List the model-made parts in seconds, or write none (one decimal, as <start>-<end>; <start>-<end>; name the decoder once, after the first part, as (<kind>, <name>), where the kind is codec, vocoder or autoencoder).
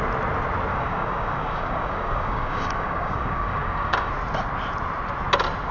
0.7-4.1 (codec, DAC)